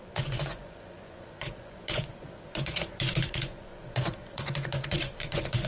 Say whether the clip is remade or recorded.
remade